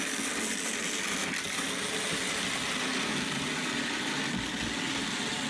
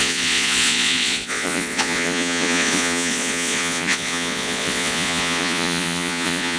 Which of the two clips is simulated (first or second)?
second